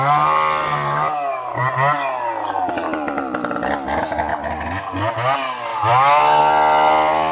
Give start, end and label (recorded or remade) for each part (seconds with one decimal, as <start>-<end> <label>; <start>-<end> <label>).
0.0-5.7 recorded; 5.7-6.4 remade; 6.4-7.3 recorded